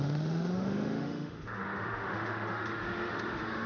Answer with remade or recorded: remade